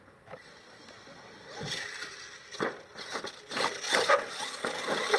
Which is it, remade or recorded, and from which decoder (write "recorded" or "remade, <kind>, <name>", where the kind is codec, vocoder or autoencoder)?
recorded